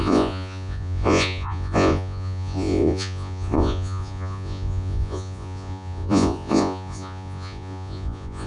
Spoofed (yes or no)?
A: yes